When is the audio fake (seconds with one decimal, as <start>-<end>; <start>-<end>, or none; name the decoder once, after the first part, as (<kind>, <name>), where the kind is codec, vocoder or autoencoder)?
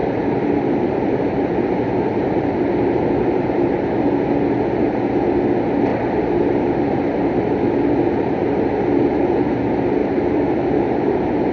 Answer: 0.0-3.7 (vocoder, BigVGAN v2); 5.9-9.4; 10.0-11.5